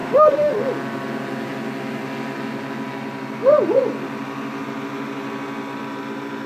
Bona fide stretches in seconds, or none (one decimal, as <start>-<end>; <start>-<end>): 0.6-6.5